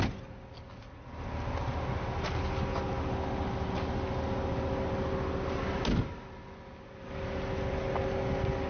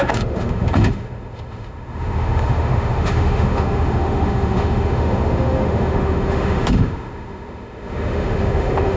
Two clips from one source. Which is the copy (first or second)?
second